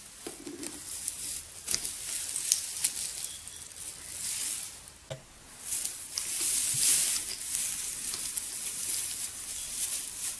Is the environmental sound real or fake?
real